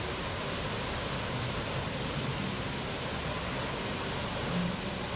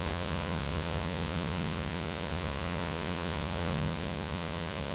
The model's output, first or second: second